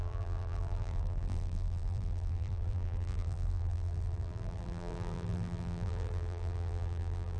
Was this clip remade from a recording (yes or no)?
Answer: yes